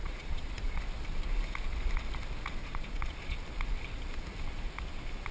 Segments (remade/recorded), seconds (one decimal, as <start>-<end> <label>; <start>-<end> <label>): 0.0-0.8 remade; 0.8-2.6 recorded; 2.6-3.4 remade; 3.4-5.3 recorded